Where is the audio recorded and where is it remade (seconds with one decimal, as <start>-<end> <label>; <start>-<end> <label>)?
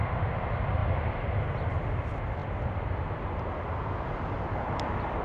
0.0-0.8 remade; 0.8-1.4 recorded; 1.4-5.2 remade